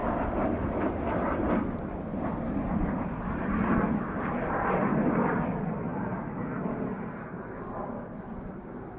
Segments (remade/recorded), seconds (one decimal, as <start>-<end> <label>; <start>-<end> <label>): 0.0-9.0 recorded